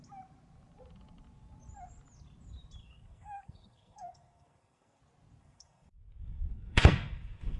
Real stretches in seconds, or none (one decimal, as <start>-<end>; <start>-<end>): 0.0-2.8; 5.0-5.4